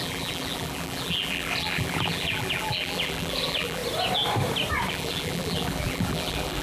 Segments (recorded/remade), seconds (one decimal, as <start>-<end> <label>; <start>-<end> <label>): 0.0-3.8 remade; 3.8-4.9 recorded; 4.9-6.6 remade